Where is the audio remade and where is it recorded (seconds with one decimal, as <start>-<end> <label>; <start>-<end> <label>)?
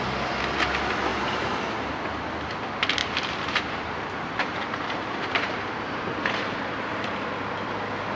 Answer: 0.0-1.1 recorded; 1.1-1.9 remade; 1.9-3.0 recorded; 3.0-7.4 remade; 7.4-8.2 recorded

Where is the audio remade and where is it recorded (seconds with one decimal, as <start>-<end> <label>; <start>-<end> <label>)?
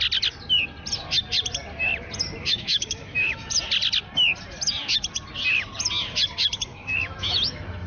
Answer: 0.0-2.4 recorded; 2.4-3.5 remade; 3.5-6.7 recorded; 6.7-7.9 remade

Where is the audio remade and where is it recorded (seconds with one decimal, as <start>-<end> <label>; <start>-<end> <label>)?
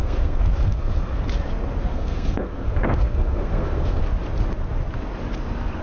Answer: 0.0-1.2 remade; 1.2-1.9 recorded; 1.9-4.0 remade; 4.0-5.8 recorded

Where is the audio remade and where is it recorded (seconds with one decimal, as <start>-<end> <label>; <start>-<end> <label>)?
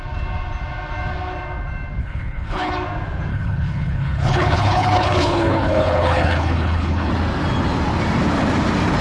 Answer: 0.0-2.0 recorded; 2.0-2.7 remade; 2.7-3.3 recorded; 3.3-7.1 remade; 7.1-9.0 recorded